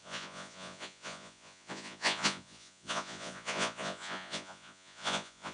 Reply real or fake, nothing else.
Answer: fake